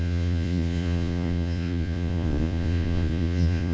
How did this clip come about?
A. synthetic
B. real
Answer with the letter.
A